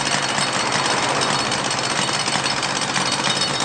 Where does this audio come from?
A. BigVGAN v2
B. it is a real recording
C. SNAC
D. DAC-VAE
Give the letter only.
B